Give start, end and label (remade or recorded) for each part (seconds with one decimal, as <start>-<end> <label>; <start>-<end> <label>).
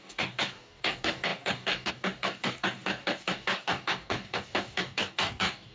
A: 0.0-5.7 remade